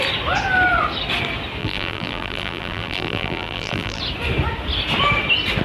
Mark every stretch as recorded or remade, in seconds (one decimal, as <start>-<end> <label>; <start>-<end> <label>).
0.0-1.6 recorded; 1.6-4.0 remade; 4.0-5.6 recorded